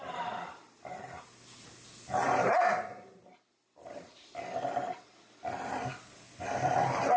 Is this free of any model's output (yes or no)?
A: yes